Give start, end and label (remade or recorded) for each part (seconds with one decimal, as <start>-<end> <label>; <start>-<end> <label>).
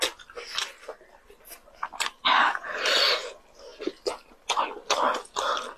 0.0-5.8 recorded